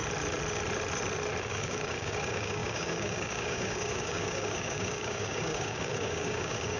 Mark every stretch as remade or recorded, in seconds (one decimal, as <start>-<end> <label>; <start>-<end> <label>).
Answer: 0.0-1.4 recorded; 1.4-6.8 remade